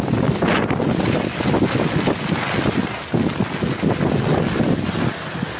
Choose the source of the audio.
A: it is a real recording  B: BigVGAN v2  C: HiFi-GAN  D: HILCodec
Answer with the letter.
A